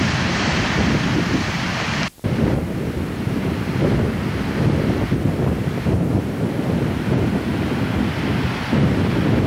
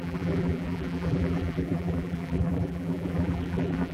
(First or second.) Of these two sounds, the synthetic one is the second